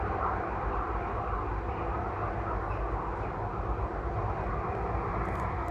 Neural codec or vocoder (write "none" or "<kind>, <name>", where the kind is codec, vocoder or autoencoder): none